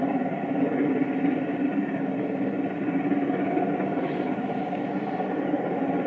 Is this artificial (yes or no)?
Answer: no